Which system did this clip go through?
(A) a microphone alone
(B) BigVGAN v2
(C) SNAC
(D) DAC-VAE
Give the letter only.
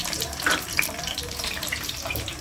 B